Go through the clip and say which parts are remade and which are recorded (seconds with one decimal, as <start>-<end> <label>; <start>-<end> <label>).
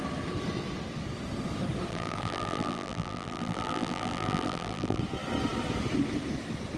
0.0-1.9 recorded; 1.9-5.0 remade; 5.0-6.8 recorded